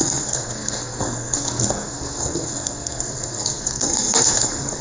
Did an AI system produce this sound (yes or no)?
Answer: yes